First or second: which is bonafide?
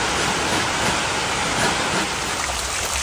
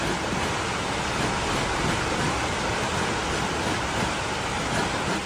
second